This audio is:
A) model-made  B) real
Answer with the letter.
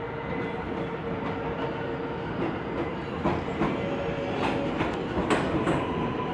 B